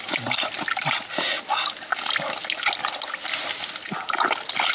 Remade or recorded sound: recorded